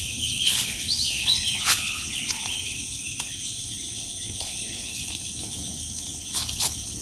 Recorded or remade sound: remade